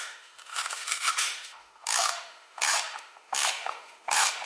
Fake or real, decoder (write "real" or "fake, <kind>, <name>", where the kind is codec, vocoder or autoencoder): fake, autoencoder, DAC-VAE